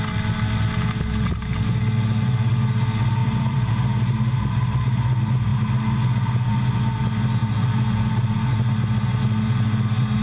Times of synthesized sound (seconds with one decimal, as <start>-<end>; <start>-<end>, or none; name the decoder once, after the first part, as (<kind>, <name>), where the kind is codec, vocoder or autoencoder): 3.2-3.7 (vocoder, BigVGAN v2)